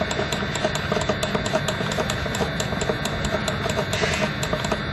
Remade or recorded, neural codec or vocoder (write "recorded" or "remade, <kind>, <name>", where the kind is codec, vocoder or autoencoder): recorded